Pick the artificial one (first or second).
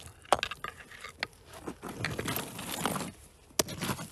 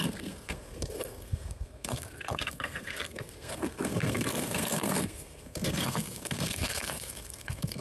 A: second